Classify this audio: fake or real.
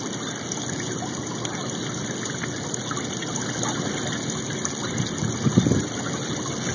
real